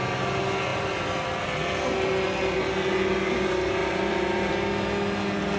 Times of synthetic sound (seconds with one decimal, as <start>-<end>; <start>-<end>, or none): 0.7-1.8; 3.8-4.5